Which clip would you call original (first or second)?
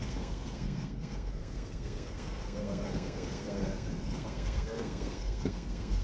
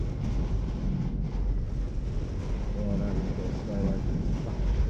second